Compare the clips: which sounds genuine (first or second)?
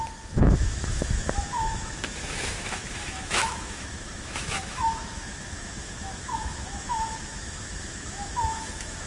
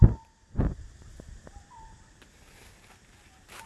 second